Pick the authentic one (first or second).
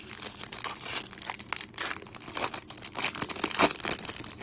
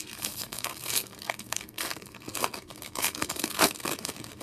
first